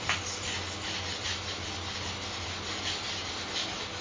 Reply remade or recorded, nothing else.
recorded